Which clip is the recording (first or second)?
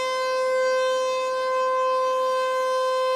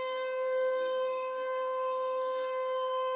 first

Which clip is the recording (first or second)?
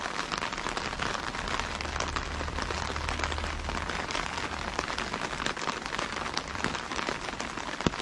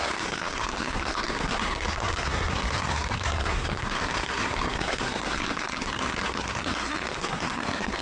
first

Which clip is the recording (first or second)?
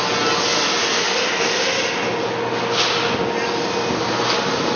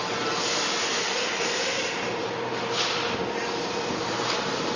first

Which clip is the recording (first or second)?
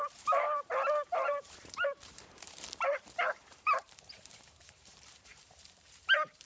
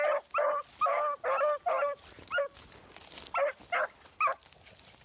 second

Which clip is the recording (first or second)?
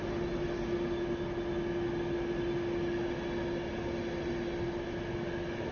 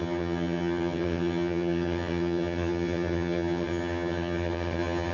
first